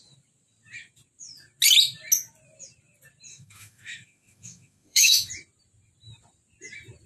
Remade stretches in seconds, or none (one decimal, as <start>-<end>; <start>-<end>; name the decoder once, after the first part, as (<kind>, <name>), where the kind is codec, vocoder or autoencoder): 3.3-5.3 (autoencoder, DAC-VAE)